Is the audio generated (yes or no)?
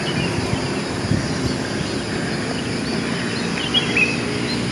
no